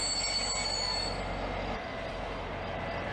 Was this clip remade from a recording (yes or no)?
no